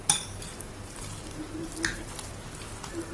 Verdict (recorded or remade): recorded